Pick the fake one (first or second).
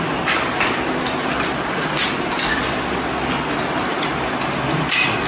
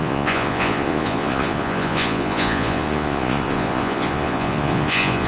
second